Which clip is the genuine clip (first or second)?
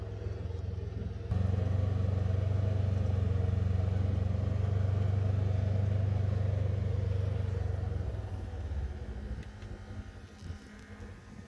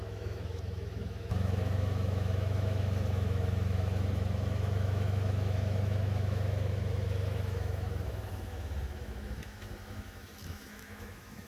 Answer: first